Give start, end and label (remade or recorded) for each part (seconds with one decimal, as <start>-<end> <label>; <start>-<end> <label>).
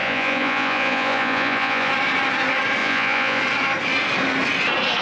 0.0-1.9 remade; 1.9-2.8 recorded; 2.8-3.4 remade; 3.4-5.0 recorded